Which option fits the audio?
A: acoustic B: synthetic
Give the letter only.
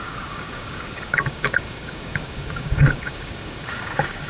B